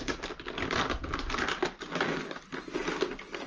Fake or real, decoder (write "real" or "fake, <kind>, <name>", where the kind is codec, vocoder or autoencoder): real